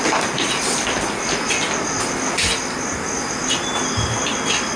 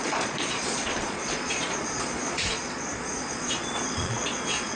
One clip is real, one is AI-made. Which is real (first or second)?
first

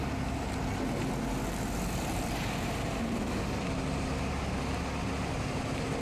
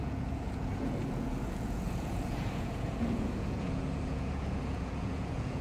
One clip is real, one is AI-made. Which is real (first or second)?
first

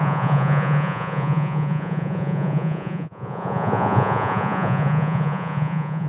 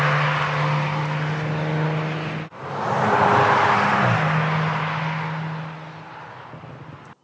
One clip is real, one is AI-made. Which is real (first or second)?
second